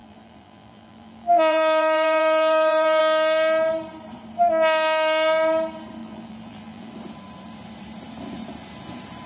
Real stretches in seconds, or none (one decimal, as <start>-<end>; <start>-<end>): 3.0-6.0; 6.9-9.3